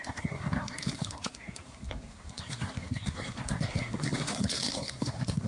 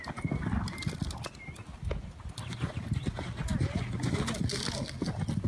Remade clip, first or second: first